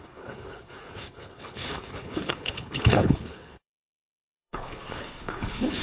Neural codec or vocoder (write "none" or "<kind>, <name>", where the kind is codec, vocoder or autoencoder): codec, HILCodec